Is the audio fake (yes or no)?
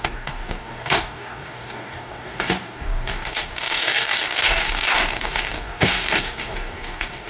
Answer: yes